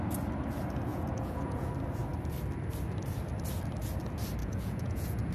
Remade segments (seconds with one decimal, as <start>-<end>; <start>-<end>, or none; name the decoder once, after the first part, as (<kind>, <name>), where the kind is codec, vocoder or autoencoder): 0.9-1.7 (vocoder, Vocos); 4.4-5.3